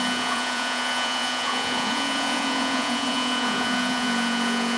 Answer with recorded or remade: remade